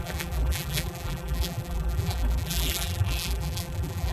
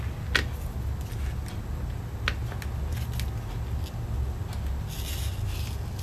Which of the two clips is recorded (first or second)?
second